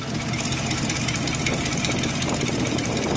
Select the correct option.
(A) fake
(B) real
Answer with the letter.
A